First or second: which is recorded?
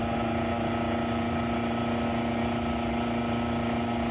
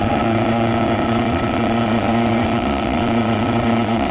first